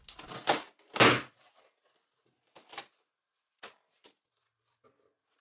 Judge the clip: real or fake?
real